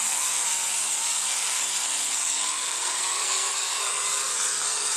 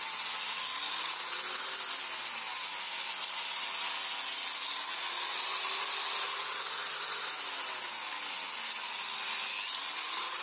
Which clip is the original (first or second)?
second